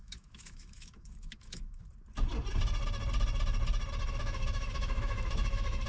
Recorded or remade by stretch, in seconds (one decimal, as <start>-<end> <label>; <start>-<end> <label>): 0.0-1.8 remade; 1.8-4.1 recorded; 4.1-5.9 remade